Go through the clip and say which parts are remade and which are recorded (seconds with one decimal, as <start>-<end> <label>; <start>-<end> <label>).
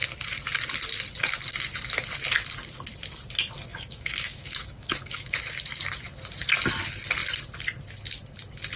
0.0-3.7 recorded; 3.7-5.4 remade; 5.4-8.8 recorded